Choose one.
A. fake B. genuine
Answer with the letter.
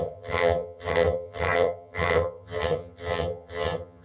A